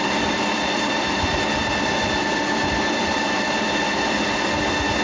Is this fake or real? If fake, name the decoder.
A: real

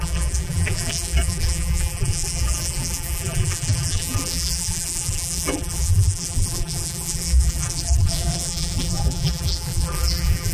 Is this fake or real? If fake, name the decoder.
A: fake, vocoder, BigVGAN v2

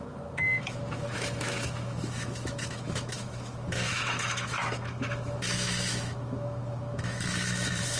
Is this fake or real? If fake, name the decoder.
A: fake, autoencoder, DAC-VAE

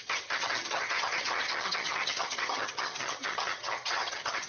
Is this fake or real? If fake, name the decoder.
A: fake, vocoder, HiFi-GAN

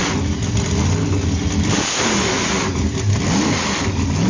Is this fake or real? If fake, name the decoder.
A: real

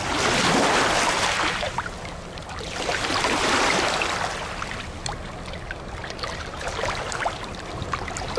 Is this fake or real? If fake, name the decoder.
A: real